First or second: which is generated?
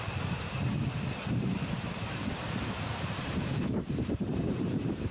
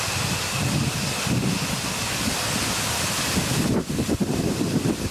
first